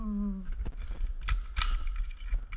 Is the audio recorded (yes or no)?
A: yes